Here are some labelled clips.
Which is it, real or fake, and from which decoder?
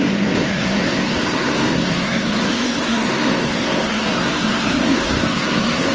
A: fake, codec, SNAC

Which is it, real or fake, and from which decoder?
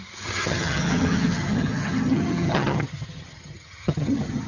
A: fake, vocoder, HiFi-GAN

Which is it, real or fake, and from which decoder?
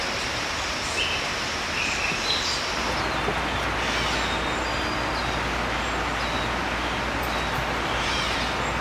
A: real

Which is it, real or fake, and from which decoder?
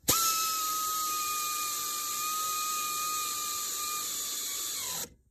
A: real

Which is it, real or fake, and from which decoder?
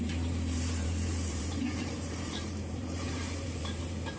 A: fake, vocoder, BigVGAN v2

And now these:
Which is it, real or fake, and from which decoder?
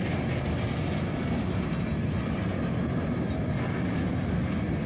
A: real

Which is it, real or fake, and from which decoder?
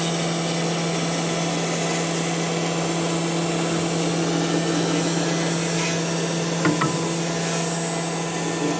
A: real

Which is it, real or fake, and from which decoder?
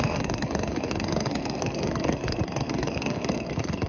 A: fake, codec, SNAC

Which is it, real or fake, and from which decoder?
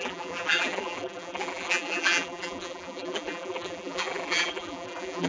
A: fake, vocoder, BigVGAN v2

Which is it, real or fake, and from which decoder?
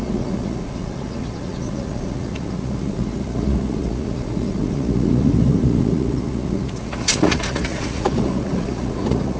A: fake, vocoder, Vocos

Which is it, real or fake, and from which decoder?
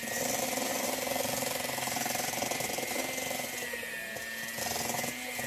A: real